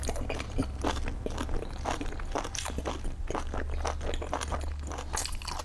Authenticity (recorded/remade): recorded